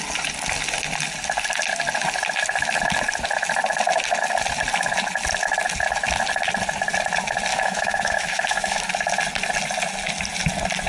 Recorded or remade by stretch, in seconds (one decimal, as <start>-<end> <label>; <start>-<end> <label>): 0.0-7.5 recorded; 7.5-8.9 remade; 8.9-10.9 recorded